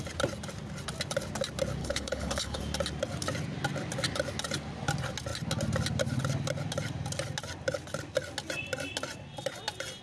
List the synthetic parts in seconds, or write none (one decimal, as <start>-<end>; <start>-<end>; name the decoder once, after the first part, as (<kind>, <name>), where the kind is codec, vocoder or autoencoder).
1.8-2.6 (codec, HILCodec)